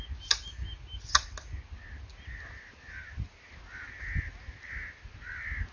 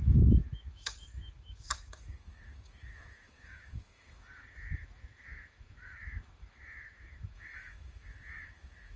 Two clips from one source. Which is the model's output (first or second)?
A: second